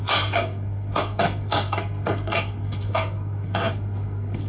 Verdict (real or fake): fake